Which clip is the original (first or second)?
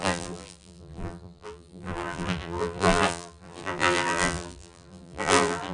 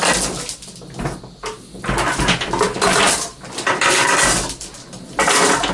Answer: second